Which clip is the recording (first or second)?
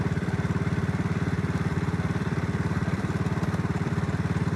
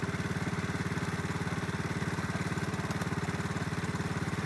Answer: second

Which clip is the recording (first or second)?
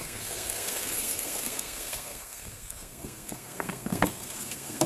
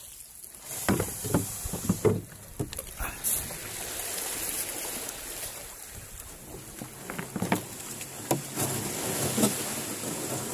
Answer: second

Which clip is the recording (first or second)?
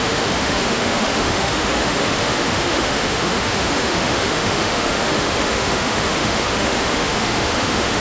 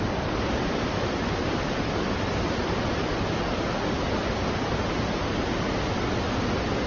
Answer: second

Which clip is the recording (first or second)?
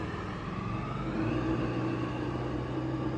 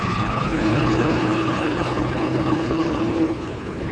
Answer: first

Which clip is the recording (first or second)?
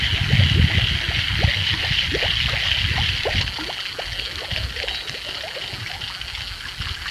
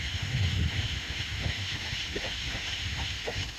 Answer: first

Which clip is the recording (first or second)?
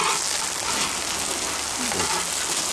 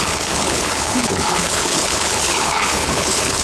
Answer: first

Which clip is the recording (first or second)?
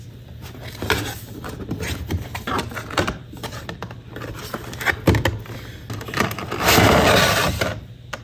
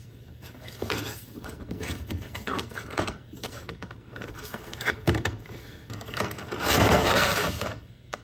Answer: first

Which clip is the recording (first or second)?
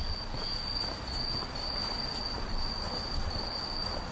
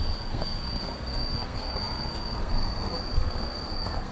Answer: first